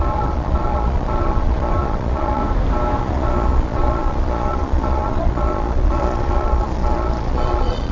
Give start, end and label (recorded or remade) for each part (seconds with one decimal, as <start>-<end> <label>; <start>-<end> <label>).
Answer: 0.0-2.4 remade; 2.4-3.0 recorded; 3.0-7.9 remade